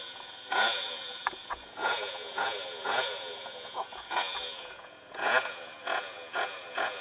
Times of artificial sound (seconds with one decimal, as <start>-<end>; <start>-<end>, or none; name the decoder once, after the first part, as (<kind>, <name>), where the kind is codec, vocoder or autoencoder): 0.0-7.0 (vocoder, Vocos)